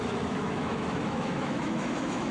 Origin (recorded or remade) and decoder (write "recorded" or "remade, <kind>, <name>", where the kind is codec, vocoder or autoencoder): remade, autoencoder, DAC-VAE